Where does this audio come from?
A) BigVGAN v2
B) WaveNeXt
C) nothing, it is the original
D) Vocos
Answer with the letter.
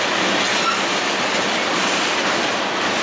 C